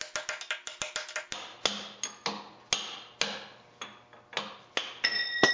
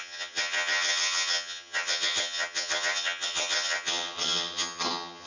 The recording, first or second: first